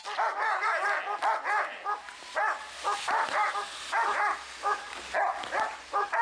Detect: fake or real real